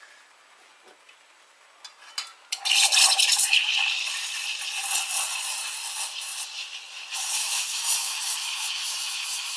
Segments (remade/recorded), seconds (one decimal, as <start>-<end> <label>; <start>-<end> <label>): 0.0-7.4 recorded; 7.4-9.6 remade